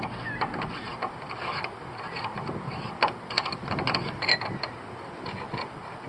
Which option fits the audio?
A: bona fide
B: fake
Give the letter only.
A